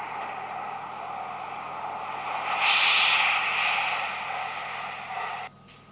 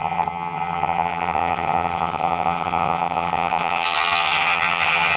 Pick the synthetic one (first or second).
second